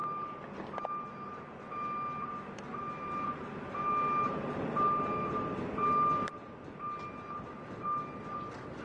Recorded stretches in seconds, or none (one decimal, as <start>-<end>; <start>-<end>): 0.0-8.8